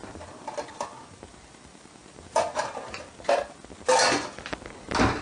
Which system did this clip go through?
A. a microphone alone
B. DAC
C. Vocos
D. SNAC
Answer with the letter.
A